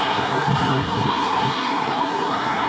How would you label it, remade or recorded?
remade